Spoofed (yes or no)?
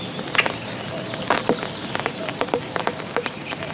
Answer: no